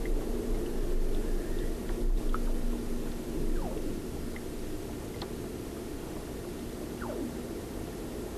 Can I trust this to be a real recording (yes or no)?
yes